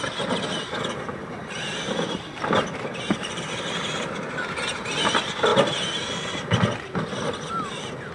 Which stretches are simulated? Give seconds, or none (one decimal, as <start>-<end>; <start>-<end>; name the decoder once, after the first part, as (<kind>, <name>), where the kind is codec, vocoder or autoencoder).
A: 1.2-4.3 (vocoder, BigVGAN v2)